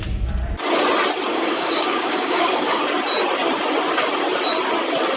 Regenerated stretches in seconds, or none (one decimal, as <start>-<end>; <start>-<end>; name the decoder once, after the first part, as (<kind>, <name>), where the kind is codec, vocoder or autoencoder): 1.3-2.8 (codec, DAC)